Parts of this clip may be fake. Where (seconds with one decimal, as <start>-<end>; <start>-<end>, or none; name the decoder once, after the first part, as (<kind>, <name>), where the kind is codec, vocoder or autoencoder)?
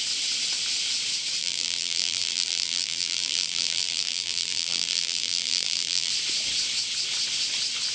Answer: 1.4-6.1 (vocoder, BigVGAN v2)